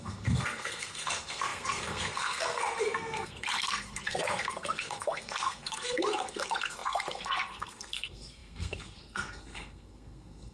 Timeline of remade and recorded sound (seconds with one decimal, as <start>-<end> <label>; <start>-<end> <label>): 0.0-10.5 remade